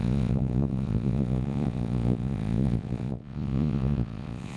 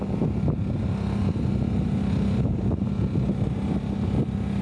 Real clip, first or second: second